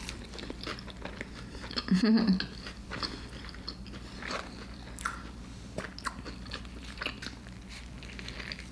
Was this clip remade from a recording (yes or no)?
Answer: no